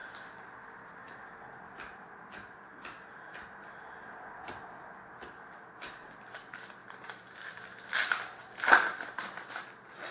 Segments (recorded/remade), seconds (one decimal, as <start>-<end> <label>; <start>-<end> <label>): 0.0-6.8 recorded; 6.8-7.4 remade; 7.4-10.1 recorded